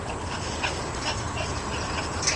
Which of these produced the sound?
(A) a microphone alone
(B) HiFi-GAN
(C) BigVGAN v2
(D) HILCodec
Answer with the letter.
A